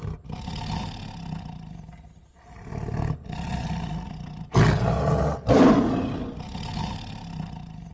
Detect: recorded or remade recorded